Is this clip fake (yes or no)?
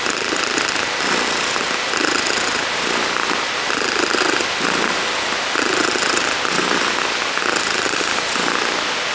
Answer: no